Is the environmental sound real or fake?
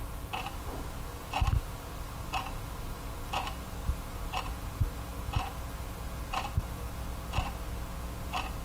real